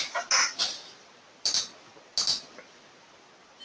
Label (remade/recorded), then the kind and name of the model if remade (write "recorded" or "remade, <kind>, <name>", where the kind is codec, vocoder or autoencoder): recorded